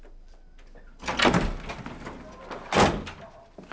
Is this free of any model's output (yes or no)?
yes